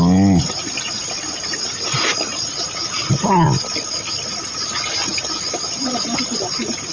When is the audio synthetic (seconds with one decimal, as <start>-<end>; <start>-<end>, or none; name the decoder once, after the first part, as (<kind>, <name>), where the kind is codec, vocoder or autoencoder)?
none